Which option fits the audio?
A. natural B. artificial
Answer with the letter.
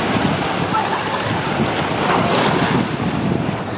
A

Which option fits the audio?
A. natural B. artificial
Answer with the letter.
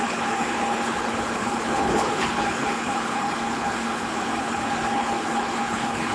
B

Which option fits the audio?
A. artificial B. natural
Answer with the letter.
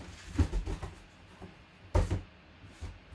B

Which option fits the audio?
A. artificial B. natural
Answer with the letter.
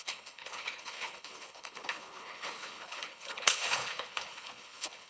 A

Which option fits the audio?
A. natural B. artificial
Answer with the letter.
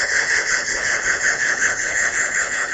B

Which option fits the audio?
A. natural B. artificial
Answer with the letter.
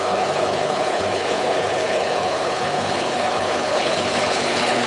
B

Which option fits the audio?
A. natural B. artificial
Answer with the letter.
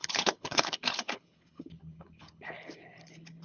B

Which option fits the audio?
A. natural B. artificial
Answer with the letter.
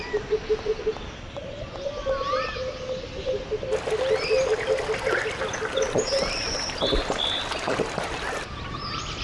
A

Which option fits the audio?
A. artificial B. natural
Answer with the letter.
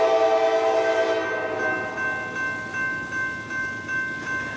B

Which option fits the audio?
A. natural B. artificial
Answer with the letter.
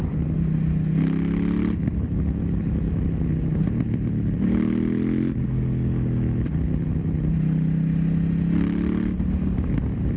A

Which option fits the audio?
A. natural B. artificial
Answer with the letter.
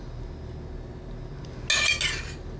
A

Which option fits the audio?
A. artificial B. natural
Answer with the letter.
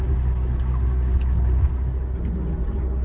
B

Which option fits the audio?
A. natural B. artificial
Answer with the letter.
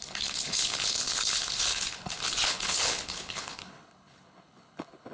B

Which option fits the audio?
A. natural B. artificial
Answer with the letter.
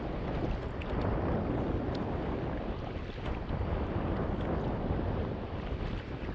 A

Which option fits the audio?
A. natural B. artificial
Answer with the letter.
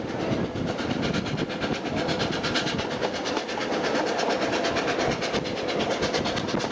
A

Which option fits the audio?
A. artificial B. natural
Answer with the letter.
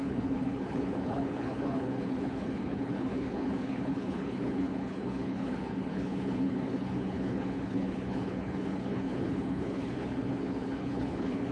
A